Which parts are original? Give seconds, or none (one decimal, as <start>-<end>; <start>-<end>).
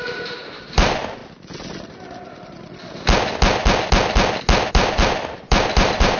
1.2-4.7